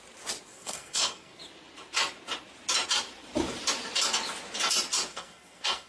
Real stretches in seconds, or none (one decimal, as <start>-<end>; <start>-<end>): 0.0-0.5; 1.4-5.1

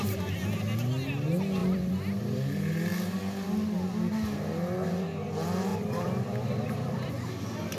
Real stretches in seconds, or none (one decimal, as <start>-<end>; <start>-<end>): 0.0-1.6; 2.2-5.7; 7.1-7.8

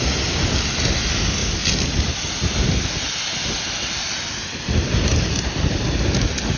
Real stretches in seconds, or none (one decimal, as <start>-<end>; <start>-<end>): 0.0-6.6

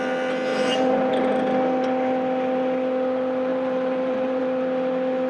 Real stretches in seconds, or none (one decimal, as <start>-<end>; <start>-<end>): 0.0-0.5; 1.1-3.5; 4.4-5.3

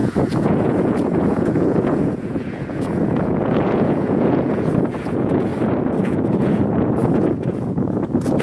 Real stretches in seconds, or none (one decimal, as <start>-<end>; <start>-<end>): 5.5-6.0

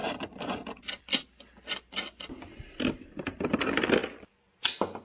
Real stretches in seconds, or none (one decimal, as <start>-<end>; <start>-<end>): 0.0-5.0

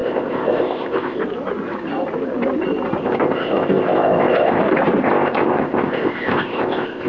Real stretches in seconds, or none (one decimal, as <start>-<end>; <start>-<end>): 1.2-3.0; 4.6-5.0